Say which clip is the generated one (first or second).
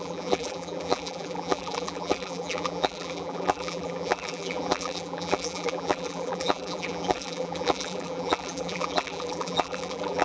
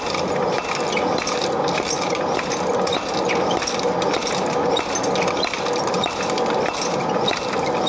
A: first